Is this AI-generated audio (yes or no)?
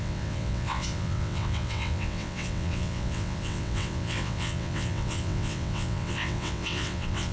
yes